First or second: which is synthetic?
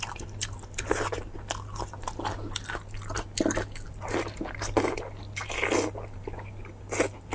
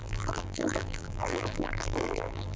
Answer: second